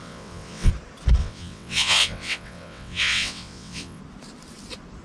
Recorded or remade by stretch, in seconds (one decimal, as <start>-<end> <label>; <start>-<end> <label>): 0.0-0.7 remade; 0.7-1.2 recorded; 1.2-4.0 remade; 4.0-5.0 recorded